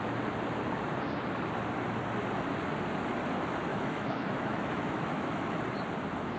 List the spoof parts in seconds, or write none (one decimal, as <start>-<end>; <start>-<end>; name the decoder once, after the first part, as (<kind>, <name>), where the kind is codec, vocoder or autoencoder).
3.7-5.6 (autoencoder, DAC-VAE)